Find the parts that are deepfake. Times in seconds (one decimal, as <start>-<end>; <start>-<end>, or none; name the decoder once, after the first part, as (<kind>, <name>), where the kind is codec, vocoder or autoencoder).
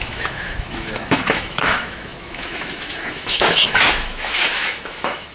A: 0.0-5.3 (autoencoder, DAC-VAE)